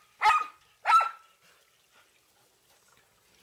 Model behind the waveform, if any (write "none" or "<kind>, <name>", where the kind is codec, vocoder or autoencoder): none